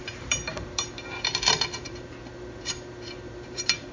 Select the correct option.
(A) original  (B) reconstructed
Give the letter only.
B